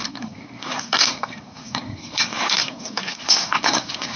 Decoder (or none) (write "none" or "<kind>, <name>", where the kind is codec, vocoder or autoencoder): codec, SNAC